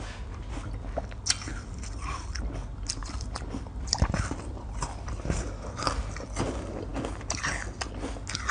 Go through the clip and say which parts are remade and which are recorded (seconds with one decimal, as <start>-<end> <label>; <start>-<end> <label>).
0.0-1.5 recorded; 1.5-2.4 remade; 2.4-3.0 recorded; 3.0-5.1 remade; 5.1-6.9 recorded; 6.9-7.5 remade; 7.5-8.5 recorded